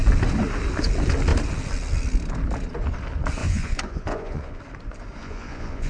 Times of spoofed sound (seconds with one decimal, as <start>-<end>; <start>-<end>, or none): 3.4-4.6; 5.2-5.9